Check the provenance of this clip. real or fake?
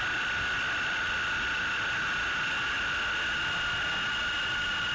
real